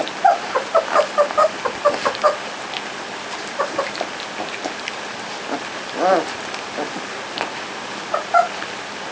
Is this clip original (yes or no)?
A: yes